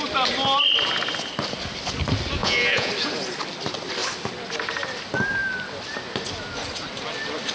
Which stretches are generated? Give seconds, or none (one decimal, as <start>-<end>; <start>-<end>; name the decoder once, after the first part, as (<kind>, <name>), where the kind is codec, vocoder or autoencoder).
2.4-2.9 (vocoder, Vocos)